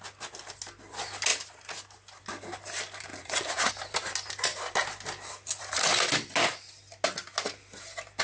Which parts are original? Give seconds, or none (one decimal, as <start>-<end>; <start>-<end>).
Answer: 0.0-3.1; 3.7-8.2